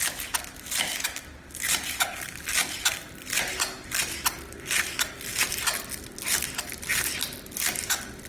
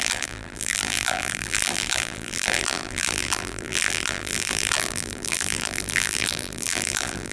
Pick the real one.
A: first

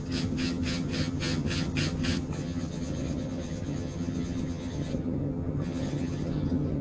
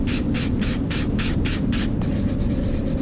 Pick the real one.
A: second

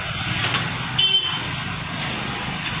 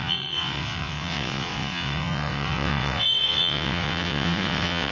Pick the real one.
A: first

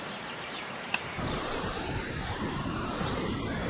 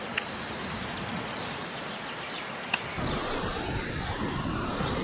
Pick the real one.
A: second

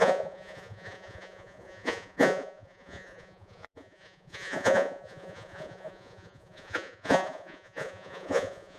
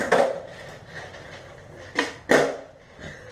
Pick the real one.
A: second